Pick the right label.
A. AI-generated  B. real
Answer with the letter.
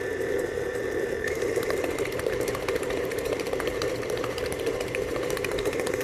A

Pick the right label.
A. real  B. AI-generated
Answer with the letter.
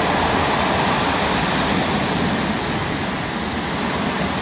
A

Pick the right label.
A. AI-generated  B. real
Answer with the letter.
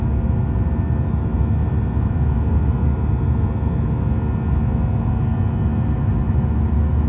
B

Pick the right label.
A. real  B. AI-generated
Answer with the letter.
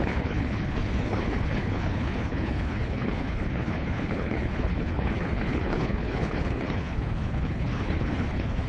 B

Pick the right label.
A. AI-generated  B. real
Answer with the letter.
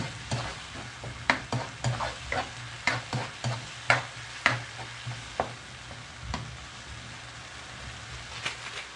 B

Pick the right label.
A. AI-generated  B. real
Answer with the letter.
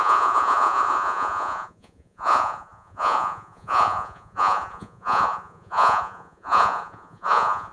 A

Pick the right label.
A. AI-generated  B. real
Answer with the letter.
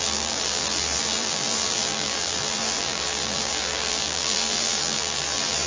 A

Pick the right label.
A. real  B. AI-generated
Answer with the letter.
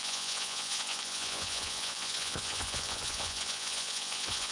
B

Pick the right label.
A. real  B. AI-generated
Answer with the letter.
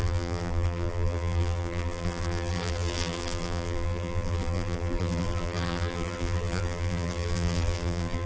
B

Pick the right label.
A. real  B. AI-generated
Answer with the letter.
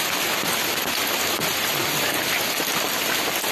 A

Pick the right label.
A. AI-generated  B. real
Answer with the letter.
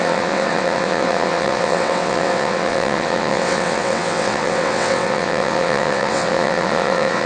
A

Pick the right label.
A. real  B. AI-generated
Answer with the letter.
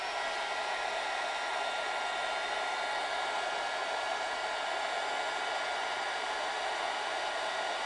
A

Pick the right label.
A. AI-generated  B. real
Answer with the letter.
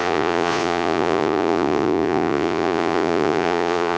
A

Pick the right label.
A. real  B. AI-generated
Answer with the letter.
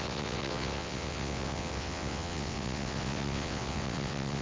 B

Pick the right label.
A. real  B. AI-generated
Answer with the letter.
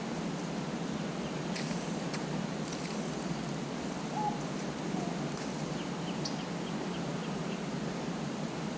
A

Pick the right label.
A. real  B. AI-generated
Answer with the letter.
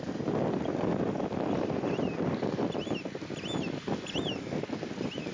A